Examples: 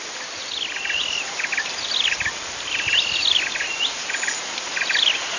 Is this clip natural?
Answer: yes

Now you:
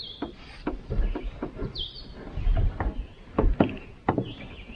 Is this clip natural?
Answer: no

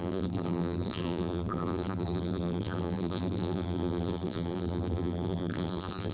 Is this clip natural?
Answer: no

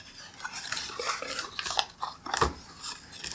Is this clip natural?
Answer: yes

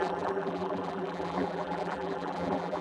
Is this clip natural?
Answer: no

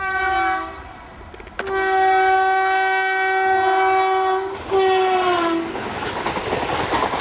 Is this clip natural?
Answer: yes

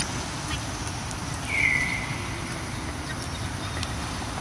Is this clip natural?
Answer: yes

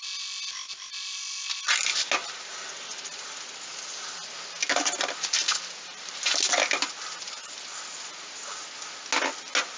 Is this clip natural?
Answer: yes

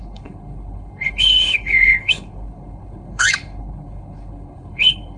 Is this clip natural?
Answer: no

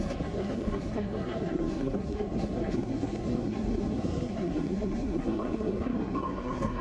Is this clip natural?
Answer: no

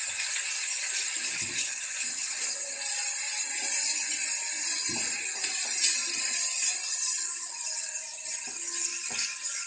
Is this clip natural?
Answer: yes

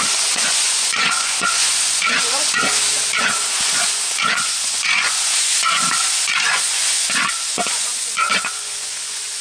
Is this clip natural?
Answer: no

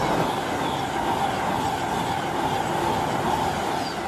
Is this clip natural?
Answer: yes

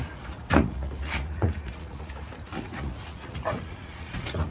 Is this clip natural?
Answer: no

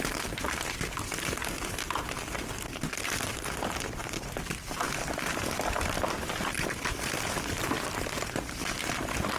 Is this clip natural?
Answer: no